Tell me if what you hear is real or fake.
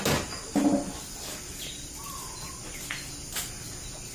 real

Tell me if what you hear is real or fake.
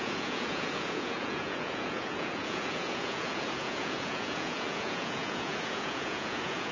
fake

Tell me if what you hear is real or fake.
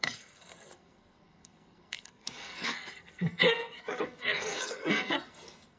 fake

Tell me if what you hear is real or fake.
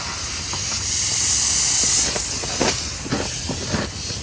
real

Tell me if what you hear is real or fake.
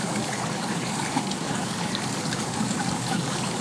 fake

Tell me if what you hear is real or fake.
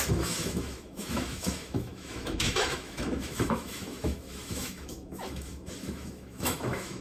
fake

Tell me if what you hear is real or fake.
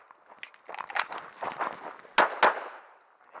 real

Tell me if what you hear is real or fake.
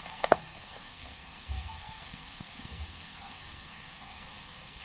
fake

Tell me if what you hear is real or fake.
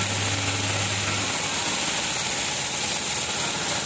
real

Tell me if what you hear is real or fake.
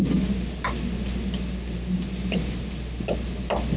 real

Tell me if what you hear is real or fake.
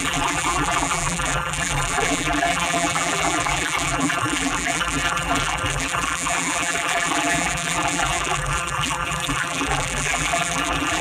fake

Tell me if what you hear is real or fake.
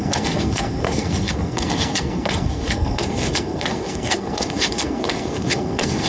fake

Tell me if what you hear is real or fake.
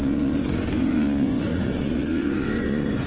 fake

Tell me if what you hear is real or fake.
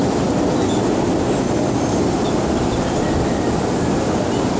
real